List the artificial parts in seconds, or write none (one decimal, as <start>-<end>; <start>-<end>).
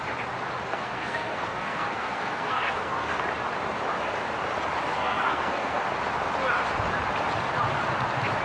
0.7-3.2; 4.9-5.8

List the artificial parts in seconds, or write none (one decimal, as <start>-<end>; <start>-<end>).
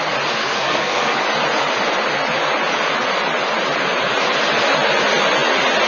0.4-1.2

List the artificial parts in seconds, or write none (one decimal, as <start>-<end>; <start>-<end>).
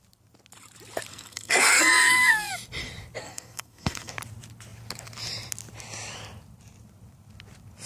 1.1-2.5; 3.2-4.1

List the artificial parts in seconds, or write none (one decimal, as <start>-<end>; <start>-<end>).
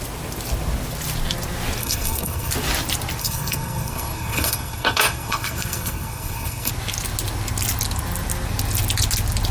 1.8-2.5; 3.2-6.7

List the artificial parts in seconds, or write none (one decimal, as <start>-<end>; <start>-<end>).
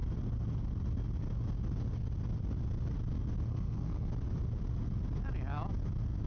3.5-4.1